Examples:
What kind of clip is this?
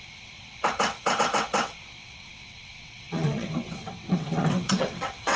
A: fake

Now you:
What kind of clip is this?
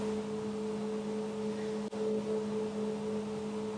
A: real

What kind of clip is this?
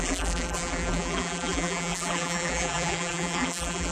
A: fake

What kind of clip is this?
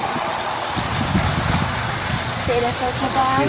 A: real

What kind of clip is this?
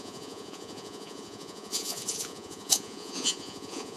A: fake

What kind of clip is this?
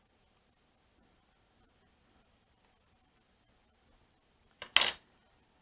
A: real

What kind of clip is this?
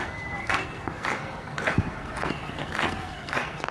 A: fake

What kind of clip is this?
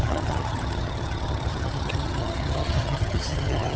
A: fake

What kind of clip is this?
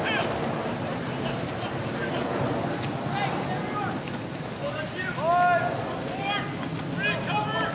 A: real